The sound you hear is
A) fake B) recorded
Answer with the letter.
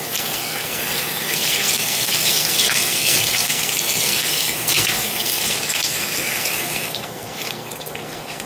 A